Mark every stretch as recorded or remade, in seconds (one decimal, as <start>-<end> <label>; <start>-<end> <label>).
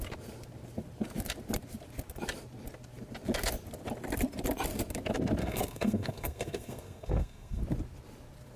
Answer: 0.0-5.4 recorded; 5.4-7.6 remade; 7.6-8.6 recorded